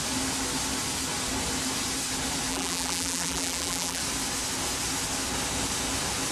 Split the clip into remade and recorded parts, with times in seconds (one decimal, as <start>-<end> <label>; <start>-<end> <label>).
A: 0.0-2.5 recorded; 2.5-4.0 remade; 4.0-6.3 recorded